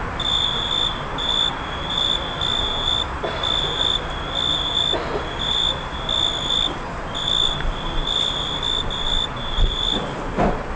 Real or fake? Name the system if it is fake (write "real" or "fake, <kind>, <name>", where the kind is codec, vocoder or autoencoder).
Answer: real